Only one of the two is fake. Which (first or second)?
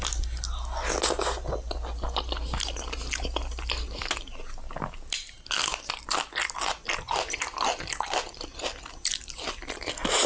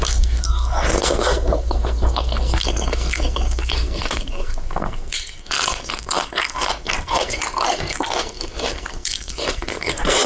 second